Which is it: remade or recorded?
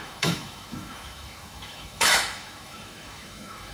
remade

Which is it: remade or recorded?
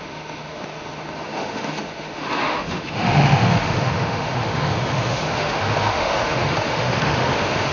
remade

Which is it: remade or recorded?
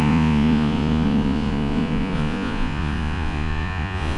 remade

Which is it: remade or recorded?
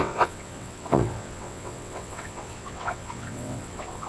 remade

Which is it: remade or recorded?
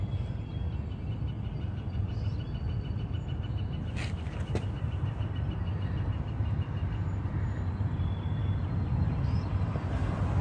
recorded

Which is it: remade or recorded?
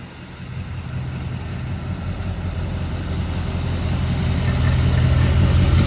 recorded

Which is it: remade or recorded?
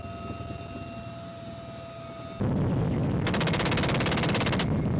recorded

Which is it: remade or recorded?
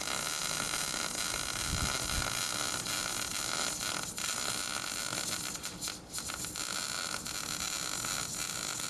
recorded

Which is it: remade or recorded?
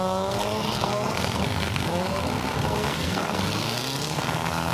remade